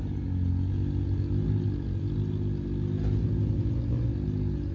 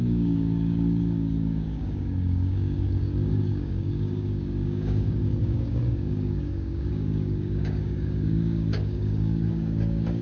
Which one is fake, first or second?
second